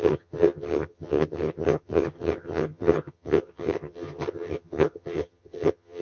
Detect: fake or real fake